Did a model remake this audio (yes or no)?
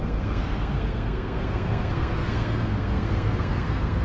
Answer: yes